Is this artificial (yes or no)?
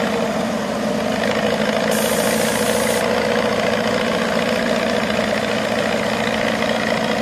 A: no